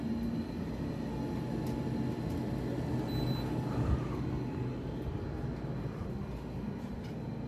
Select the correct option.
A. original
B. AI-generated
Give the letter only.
A